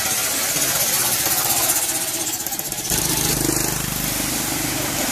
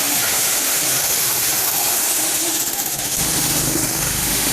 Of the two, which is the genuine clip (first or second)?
first